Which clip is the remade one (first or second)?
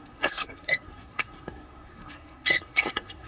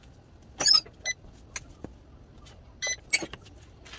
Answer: first